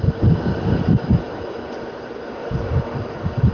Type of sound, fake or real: real